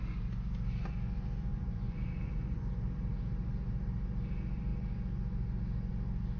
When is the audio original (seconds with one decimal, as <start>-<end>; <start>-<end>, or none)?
0.0-1.5; 2.7-6.4